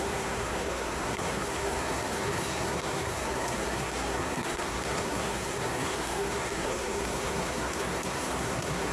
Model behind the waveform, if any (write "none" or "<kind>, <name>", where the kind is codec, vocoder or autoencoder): codec, SNAC